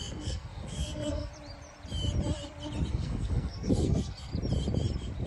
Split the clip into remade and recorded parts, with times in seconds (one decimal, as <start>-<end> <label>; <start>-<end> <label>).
0.0-1.3 remade; 1.3-2.9 recorded; 2.9-4.3 remade; 4.3-5.3 recorded